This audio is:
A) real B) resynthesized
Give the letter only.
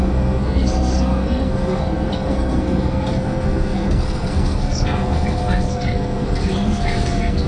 B